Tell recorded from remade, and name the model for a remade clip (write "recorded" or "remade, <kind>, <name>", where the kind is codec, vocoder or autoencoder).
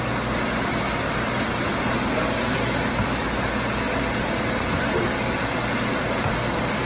recorded